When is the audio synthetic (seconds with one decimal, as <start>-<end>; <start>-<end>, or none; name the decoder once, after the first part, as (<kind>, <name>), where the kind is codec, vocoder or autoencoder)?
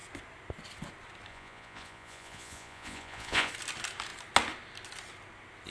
1.3-3.5 (vocoder, Vocos)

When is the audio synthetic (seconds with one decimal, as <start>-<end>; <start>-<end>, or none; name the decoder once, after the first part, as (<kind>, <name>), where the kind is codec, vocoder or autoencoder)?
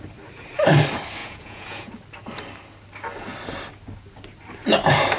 1.2-1.9 (vocoder, Vocos)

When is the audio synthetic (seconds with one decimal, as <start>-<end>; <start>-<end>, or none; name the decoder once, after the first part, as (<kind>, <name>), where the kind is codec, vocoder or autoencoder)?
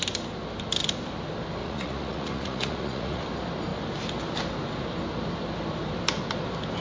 1.6-3.2 (vocoder, Vocos)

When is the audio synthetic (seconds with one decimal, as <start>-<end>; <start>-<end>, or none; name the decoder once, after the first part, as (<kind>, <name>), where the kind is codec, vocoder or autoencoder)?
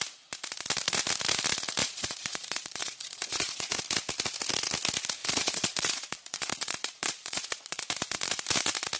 1.8-3.8 (vocoder, Vocos); 5.2-7.8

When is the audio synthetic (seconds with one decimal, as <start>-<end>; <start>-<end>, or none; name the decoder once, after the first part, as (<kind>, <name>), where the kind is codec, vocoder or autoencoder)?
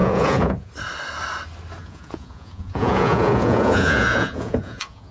0.0-0.7 (vocoder, Vocos); 1.8-5.1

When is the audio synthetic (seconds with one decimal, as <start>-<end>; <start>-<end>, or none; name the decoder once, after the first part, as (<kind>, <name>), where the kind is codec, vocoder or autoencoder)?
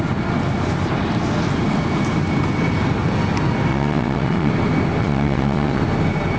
3.7-4.5 (vocoder, Vocos); 5.0-5.8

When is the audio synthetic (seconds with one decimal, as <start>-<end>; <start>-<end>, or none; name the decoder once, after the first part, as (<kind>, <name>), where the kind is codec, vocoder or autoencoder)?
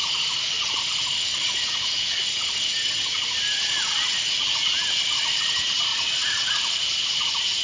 1.2-2.2 (vocoder, Vocos); 5.9-6.6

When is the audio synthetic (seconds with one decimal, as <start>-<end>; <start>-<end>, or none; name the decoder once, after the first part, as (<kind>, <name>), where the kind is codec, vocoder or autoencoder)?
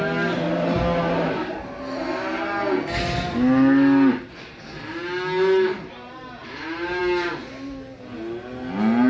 none